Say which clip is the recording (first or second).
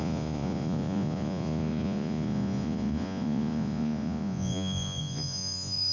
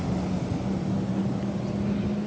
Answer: second